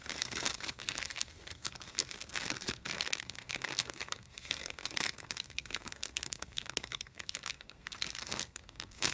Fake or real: fake